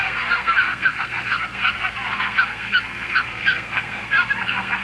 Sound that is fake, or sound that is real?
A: fake